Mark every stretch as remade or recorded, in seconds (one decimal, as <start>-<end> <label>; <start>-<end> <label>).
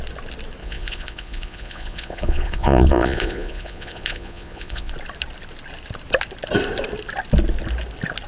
0.0-0.6 recorded; 0.6-4.9 remade; 4.9-8.3 recorded